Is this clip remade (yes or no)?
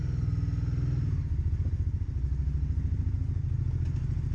no